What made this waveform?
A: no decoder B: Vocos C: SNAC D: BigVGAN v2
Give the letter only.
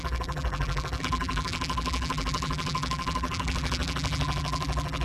D